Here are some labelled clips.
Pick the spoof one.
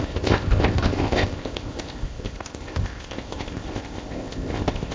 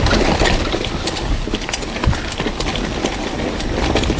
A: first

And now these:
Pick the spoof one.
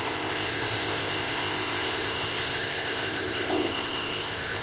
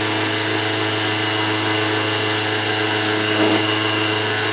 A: first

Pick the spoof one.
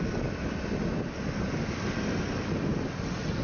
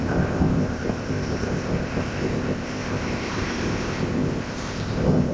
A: second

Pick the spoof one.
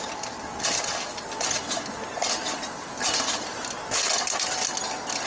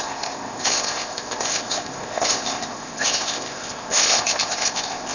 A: second